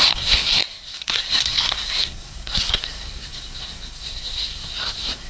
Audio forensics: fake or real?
fake